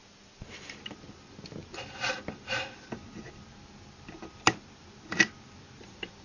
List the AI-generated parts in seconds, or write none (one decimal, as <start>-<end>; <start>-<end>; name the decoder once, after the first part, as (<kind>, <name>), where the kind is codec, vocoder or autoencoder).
none